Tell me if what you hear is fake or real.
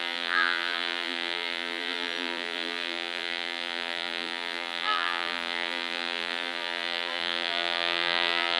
fake